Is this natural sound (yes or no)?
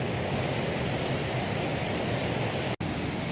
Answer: yes